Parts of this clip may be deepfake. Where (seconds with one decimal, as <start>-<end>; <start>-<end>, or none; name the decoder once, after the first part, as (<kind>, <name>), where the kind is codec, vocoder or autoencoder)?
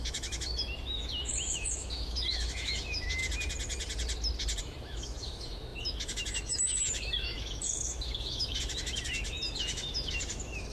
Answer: 0.0-3.2 (autoencoder, DAC-VAE); 4.6-10.7